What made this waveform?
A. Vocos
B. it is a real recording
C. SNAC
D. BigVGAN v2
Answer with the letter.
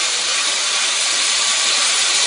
D